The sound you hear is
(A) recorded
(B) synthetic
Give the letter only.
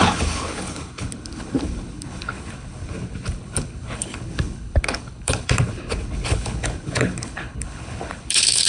B